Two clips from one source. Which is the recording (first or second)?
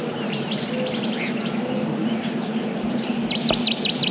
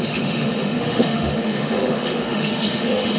first